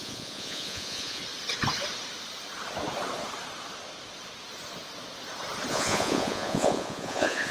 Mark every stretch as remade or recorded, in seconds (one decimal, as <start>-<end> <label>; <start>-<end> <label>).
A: 0.0-1.2 remade; 1.2-5.7 recorded; 5.7-7.5 remade